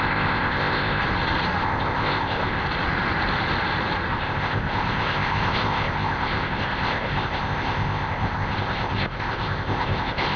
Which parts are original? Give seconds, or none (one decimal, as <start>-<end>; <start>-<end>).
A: 1.0-1.6; 2.6-4.1